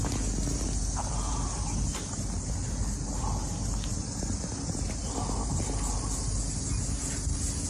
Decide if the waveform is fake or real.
real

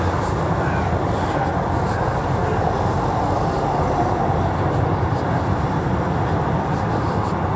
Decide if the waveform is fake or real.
real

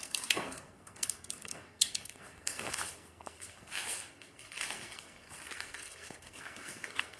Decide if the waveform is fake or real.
fake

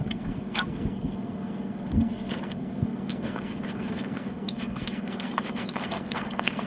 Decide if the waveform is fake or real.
fake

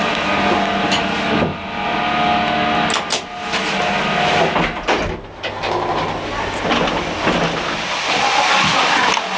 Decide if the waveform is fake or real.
real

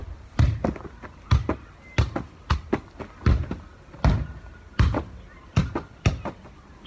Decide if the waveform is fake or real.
real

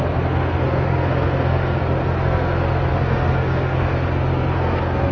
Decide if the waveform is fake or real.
fake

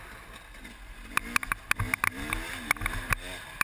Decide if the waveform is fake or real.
real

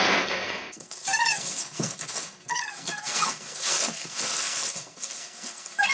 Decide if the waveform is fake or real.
fake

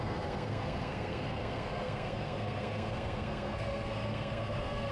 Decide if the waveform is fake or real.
fake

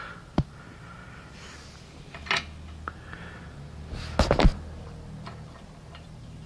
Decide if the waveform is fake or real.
real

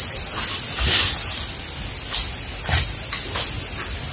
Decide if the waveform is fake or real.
real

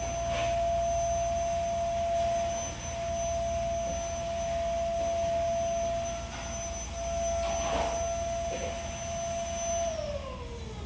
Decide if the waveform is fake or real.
real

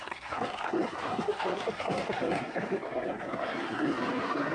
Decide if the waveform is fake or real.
fake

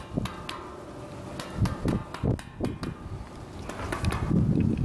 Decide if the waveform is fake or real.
real